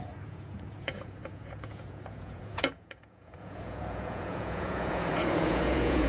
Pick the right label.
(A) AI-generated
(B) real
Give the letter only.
A